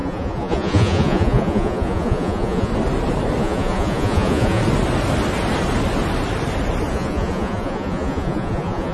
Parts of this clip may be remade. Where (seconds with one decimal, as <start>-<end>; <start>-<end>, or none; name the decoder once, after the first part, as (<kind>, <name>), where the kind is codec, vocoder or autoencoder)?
0.0-2.7 (vocoder, Vocos); 3.4-4.6; 6.9-8.9